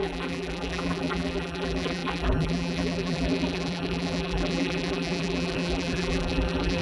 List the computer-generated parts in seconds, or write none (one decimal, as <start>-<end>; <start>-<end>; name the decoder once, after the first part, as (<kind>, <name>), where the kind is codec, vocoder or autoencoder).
0.0-6.8 (vocoder, BigVGAN v2)